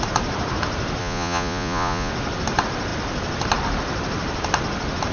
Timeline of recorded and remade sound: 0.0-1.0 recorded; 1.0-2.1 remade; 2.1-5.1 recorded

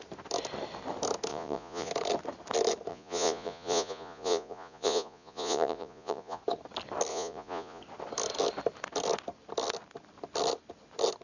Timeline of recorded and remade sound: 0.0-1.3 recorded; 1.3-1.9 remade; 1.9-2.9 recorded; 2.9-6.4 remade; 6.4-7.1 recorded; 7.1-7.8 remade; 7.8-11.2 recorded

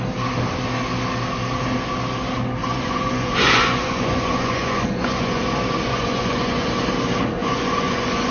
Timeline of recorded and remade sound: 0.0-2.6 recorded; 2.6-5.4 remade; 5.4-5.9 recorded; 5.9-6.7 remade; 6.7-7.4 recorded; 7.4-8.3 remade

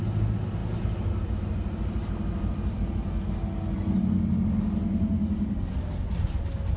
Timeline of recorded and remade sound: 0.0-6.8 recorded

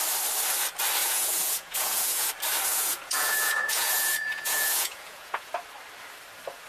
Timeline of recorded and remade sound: 0.0-1.0 recorded; 1.0-2.3 remade; 2.3-2.7 recorded; 2.7-5.5 remade; 5.5-6.7 recorded

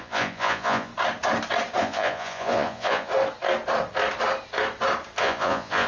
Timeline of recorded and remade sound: 0.0-0.9 remade; 0.9-1.8 recorded; 1.8-3.1 remade; 3.1-5.2 recorded; 5.2-5.9 remade

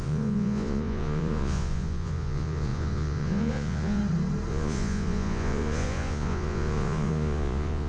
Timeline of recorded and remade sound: 0.0-4.0 remade; 4.0-4.5 recorded; 4.5-7.9 remade

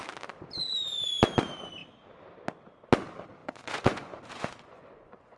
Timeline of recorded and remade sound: 0.0-3.4 recorded; 3.4-5.4 remade